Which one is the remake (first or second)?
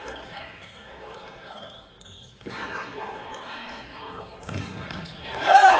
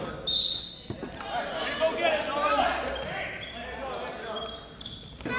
first